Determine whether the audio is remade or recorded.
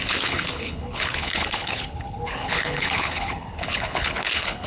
remade